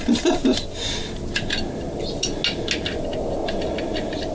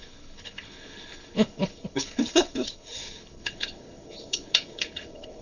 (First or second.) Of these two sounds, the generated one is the second